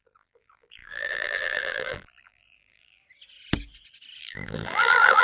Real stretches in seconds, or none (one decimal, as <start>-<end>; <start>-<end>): 3.0-4.2